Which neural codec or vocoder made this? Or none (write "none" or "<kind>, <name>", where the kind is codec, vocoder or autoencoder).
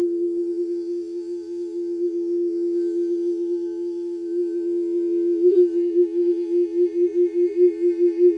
vocoder, Vocos